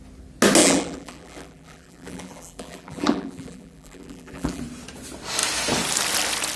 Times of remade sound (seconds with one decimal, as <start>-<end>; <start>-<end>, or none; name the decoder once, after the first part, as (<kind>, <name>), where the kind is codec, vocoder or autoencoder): 0.6-4.6 (vocoder, BigVGAN v2)

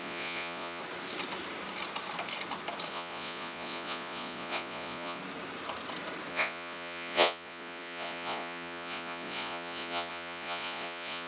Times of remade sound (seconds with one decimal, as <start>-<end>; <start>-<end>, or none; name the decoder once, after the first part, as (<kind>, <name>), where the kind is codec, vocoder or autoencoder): 0.0-0.8 (vocoder, Vocos); 2.9-5.2; 6.3-11.3